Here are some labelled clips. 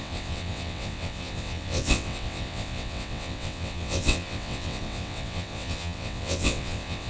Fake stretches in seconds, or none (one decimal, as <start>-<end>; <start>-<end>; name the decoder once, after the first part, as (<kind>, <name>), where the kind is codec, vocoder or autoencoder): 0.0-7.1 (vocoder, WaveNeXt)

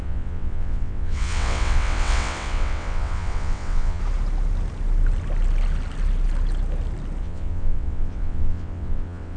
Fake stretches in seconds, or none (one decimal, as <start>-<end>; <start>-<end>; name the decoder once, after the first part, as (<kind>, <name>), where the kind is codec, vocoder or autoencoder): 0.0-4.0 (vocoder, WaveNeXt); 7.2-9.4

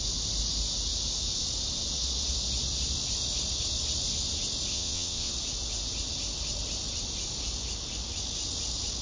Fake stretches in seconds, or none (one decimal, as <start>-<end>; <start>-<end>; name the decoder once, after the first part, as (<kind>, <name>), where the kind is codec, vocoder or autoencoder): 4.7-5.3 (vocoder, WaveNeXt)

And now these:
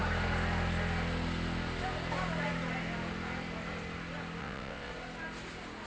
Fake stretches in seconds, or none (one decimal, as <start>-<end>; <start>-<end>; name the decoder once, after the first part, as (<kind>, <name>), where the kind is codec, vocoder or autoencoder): 4.4-4.9 (vocoder, WaveNeXt)

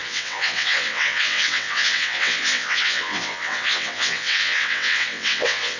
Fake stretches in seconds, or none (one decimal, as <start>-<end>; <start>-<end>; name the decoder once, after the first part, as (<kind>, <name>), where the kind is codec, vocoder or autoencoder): 0.0-5.8 (vocoder, WaveNeXt)

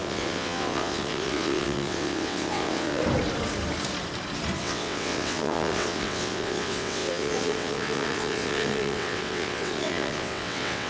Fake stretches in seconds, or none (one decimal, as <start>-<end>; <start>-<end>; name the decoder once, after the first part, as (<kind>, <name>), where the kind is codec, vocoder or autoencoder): 0.0-3.0 (vocoder, WaveNeXt); 4.6-10.9

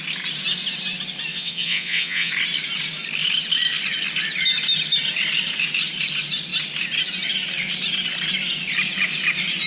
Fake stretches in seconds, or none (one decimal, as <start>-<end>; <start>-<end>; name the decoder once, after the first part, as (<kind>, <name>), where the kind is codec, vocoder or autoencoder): 1.3-2.3 (vocoder, WaveNeXt)